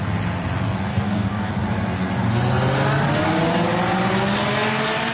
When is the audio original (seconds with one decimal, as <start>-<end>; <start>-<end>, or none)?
0.0-0.9; 1.5-5.1